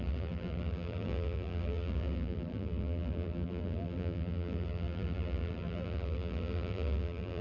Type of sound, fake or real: fake